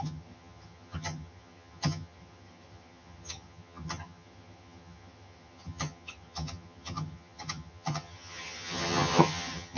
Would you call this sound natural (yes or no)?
no